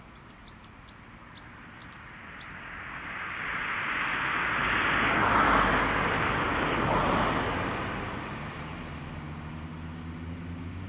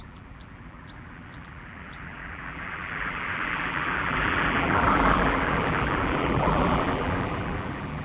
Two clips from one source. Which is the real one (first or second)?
first